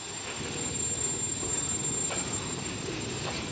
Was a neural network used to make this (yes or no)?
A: no